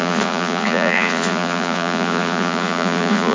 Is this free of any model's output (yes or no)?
no